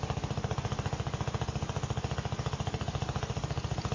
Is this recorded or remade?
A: recorded